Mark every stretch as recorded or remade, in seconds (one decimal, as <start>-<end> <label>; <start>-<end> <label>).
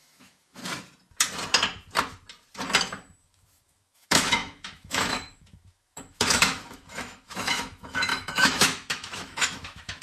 0.0-0.6 remade; 0.6-3.2 recorded; 3.2-10.0 remade